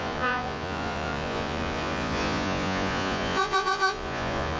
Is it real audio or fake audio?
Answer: fake